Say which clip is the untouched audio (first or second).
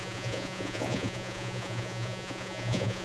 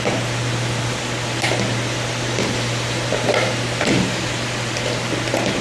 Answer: second